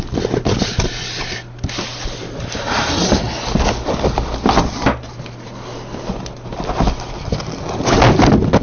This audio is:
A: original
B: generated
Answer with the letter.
A